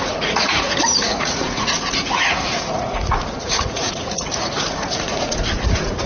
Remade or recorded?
remade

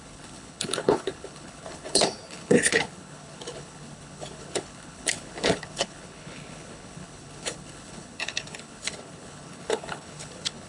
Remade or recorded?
remade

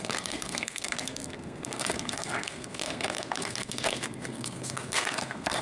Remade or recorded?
remade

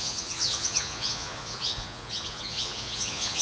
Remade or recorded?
remade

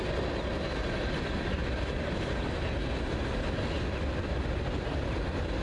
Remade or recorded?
recorded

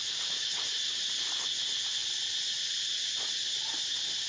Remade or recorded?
recorded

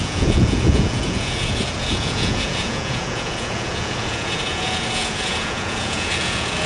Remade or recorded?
remade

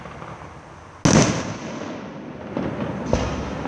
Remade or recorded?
recorded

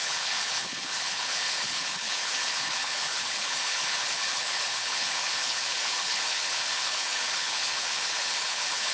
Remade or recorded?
remade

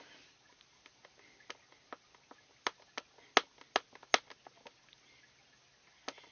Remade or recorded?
recorded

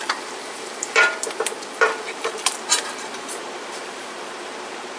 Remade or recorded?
remade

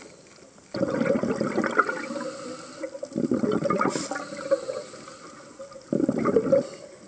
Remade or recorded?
recorded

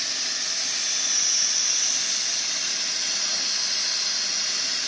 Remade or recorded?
recorded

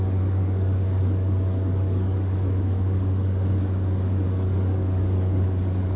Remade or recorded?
remade